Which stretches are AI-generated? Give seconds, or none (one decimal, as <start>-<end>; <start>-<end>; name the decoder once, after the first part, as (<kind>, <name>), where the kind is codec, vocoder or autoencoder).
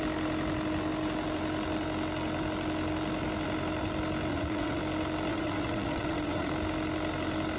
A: 4.3-4.8 (vocoder, WaveNeXt); 5.3-6.5